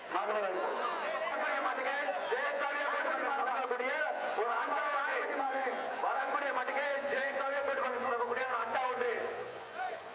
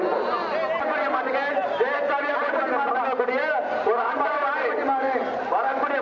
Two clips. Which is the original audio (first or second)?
second